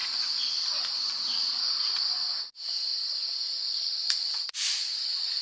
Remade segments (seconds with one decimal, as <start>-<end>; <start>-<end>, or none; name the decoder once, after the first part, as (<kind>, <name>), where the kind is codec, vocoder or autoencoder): none